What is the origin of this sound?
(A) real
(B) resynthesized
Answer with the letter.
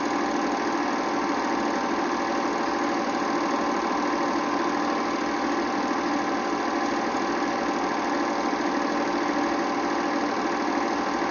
A